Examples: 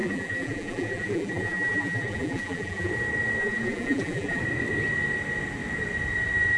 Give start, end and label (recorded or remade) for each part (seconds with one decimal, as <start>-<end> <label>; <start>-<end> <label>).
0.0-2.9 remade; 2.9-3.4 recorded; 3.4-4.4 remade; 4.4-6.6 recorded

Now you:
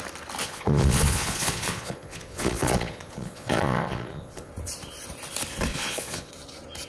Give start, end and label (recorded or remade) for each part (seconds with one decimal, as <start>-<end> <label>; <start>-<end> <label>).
0.0-0.4 recorded; 0.4-4.5 remade; 4.5-5.7 recorded; 5.7-6.3 remade; 6.3-6.9 recorded

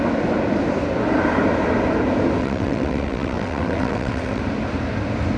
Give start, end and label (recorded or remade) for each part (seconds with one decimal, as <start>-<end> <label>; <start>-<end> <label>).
0.0-2.4 recorded; 2.4-4.4 remade; 4.4-5.4 recorded